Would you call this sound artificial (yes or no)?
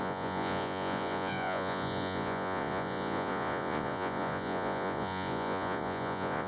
yes